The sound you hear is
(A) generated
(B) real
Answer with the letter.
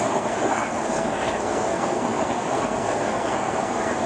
A